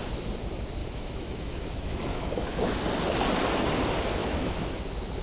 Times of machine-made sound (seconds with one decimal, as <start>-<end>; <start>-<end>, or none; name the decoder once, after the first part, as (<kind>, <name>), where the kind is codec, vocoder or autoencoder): 0.8-2.8 (autoencoder, DAC-VAE); 4.2-4.8